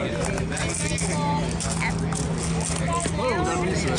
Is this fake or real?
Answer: real